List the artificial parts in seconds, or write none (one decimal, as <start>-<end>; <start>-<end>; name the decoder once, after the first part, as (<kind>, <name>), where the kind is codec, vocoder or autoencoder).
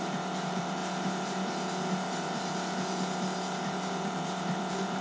0.0-0.8 (vocoder, BigVGAN v2); 3.8-5.0